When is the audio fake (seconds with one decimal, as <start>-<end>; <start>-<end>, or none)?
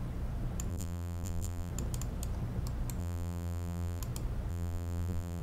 0.7-1.7; 3.0-4.0; 4.5-5.4